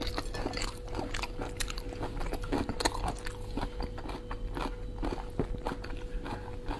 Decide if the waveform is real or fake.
real